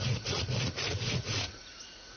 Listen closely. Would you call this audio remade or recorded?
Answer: remade